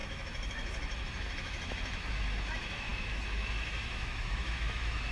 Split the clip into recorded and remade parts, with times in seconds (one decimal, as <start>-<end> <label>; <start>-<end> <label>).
0.0-5.1 remade